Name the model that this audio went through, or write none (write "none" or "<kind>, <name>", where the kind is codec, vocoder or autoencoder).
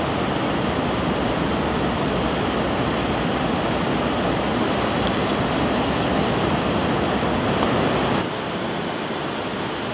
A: none